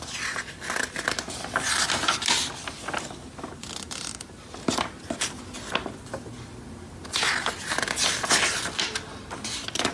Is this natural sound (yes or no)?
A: yes